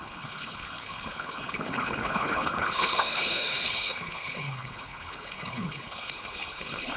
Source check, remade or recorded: remade